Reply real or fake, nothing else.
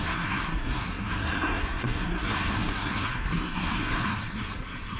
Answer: fake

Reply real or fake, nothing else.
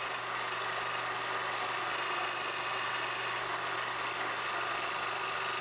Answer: real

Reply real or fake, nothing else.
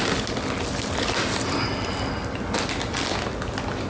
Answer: real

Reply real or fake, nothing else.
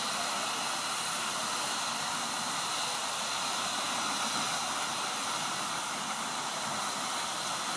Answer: real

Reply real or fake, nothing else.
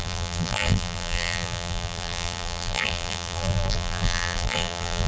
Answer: fake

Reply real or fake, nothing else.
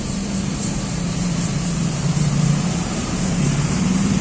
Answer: fake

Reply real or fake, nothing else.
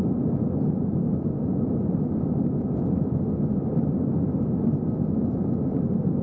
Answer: real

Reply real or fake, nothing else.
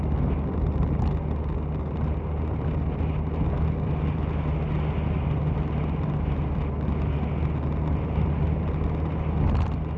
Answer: real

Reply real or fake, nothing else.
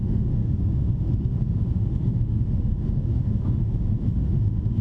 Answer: fake